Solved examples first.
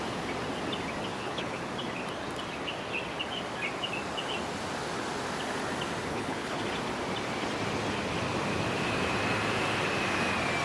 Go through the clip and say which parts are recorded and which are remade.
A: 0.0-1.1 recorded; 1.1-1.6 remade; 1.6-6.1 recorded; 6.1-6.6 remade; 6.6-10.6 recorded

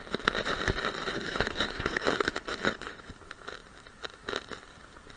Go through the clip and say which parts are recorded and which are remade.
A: 0.0-1.1 recorded; 1.1-3.1 remade; 3.1-5.2 recorded

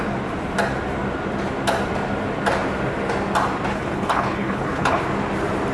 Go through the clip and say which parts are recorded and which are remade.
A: 0.0-3.7 recorded; 3.7-5.0 remade; 5.0-5.7 recorded